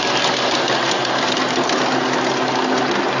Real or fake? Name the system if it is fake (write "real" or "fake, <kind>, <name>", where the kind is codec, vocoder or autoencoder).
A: real